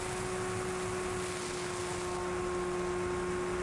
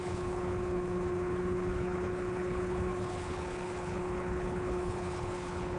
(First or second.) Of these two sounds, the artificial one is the second